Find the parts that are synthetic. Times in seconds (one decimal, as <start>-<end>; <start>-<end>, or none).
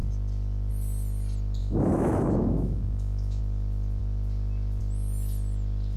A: 1.6-3.4